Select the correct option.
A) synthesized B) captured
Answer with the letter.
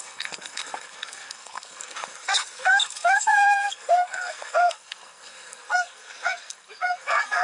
A